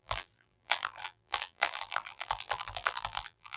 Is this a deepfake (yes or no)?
yes